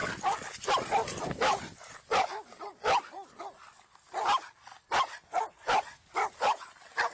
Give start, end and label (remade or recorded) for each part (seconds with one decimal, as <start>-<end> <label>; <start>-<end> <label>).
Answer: 0.0-7.1 recorded